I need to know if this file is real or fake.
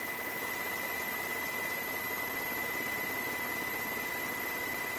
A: real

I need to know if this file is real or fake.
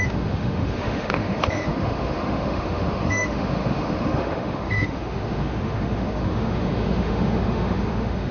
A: fake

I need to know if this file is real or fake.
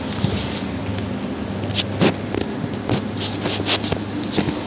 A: real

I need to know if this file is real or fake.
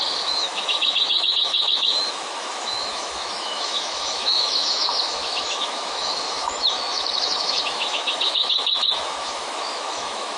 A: fake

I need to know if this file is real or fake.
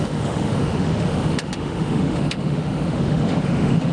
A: fake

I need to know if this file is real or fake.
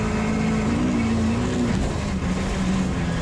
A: real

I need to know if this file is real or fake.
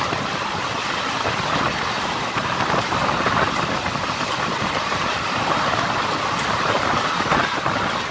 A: real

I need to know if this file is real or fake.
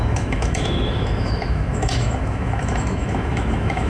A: fake